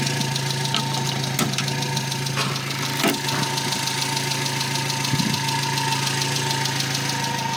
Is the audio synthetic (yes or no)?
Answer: no